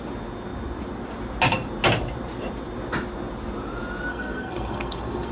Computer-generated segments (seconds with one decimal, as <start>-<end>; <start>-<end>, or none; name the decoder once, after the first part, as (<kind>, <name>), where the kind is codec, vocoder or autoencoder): 4.1-5.3 (codec, SNAC)